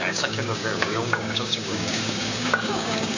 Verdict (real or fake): fake